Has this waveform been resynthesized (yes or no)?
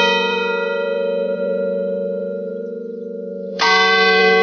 yes